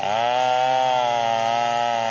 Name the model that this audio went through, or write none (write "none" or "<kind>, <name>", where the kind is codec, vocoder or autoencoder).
none